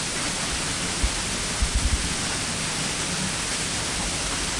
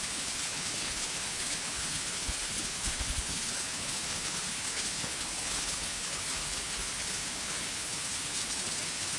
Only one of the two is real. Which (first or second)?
first